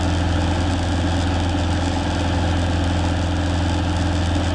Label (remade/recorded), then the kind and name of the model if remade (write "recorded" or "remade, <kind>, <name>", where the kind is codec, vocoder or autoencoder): recorded